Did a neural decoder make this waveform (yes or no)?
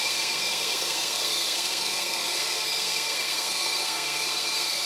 yes